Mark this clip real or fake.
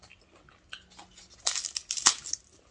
real